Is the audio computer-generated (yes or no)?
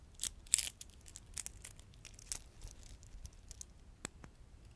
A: no